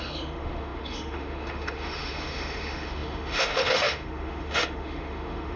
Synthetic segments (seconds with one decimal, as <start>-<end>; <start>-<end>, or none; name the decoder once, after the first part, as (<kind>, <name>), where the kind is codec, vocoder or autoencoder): 0.0-5.6 (autoencoder, DAC-VAE)